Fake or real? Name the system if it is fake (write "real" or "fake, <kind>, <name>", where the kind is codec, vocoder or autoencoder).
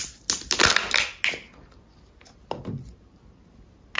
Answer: real